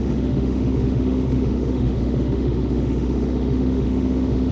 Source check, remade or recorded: remade